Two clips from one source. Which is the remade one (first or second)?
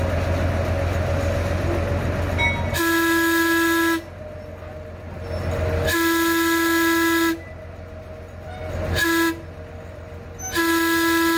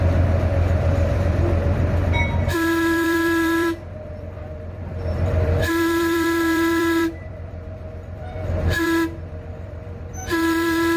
second